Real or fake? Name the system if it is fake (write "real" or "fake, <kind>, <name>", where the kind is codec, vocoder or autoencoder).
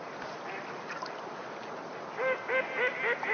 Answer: real